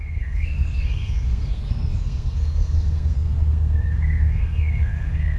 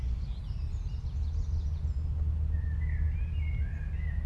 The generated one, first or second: first